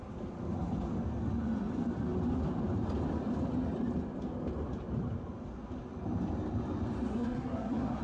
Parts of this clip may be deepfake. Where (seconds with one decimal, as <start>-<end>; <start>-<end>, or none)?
7.1-8.0